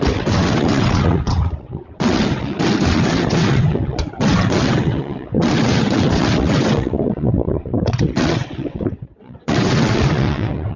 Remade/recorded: remade